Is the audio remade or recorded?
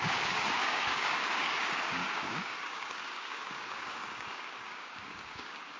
remade